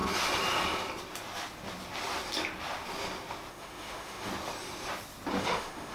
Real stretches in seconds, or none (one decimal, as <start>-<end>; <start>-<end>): 0.0-3.5; 4.3-5.4